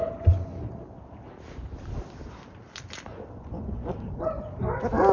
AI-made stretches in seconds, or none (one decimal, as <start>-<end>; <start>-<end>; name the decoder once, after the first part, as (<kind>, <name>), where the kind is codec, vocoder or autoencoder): 3.1-4.2 (vocoder, Vocos)